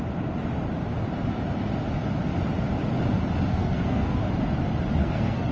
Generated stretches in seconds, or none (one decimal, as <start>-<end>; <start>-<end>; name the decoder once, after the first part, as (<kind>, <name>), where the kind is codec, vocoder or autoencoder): 3.5-4.2 (codec, SNAC); 5.0-5.5